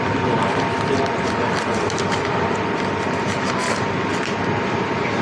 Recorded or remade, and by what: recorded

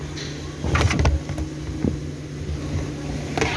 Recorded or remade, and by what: recorded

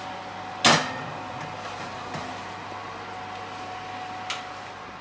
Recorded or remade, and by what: recorded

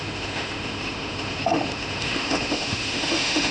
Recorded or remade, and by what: remade, autoencoder, DAC-VAE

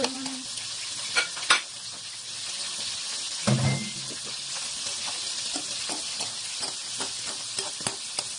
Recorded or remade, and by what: recorded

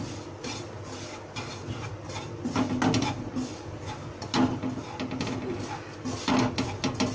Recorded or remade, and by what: recorded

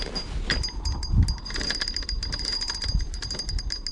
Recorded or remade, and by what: recorded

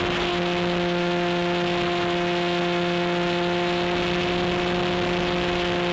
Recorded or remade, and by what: recorded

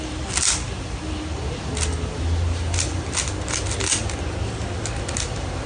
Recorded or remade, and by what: recorded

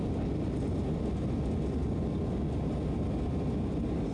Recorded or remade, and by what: recorded